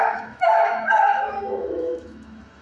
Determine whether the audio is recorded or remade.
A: remade